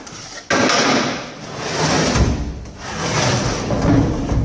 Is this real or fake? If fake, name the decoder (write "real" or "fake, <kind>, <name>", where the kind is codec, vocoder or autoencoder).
real